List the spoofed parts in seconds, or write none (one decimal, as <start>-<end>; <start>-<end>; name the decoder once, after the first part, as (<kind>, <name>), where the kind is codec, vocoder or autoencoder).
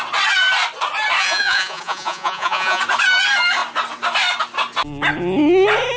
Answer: 1.2-2.8 (vocoder, Vocos)